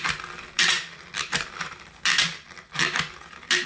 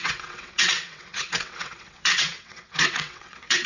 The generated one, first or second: second